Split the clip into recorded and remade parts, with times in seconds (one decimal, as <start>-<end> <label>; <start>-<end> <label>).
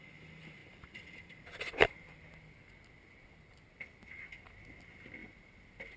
0.0-6.0 recorded